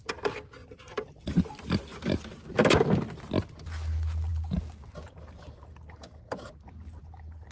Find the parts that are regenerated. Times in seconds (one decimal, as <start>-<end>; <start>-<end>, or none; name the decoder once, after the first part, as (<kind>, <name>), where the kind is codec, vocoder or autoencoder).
0.6-1.4 (vocoder, BigVGAN v2)